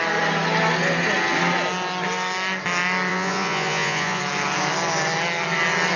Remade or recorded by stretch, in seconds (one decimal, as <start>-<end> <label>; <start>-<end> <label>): 0.0-3.1 recorded; 3.1-4.2 remade; 4.2-6.0 recorded